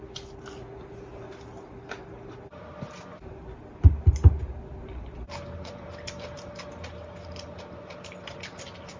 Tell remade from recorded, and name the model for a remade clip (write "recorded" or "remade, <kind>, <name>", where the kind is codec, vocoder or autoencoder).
recorded